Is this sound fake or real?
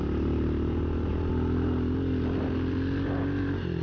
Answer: real